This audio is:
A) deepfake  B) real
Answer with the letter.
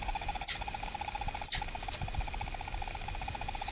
B